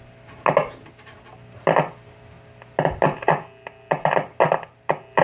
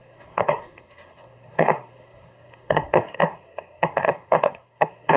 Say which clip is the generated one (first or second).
second